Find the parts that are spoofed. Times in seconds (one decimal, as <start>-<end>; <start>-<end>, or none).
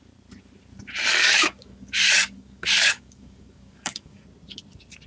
1.1-4.2